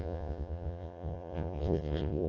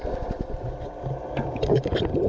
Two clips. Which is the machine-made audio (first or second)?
first